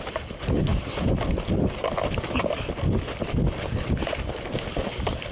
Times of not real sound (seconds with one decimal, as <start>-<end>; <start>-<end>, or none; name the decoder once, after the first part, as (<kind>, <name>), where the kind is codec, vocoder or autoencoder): none